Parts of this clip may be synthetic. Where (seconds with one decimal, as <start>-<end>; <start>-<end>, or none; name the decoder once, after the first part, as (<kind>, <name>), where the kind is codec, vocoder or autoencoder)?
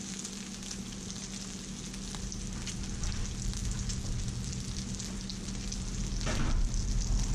none